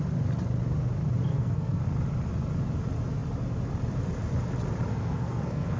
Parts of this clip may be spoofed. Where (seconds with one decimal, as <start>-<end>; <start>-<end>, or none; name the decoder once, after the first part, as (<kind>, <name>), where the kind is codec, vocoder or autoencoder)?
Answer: 1.3-1.8 (codec, SNAC); 4.9-5.8